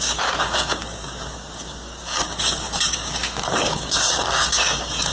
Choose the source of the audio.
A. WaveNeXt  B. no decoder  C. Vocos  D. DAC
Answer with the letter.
D